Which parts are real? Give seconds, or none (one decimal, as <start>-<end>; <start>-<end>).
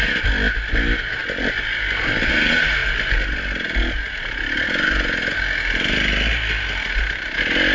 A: 0.0-7.7